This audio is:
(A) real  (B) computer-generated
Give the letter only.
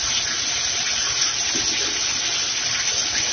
A